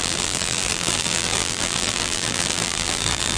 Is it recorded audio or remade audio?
remade